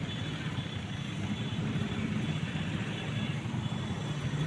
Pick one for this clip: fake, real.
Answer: real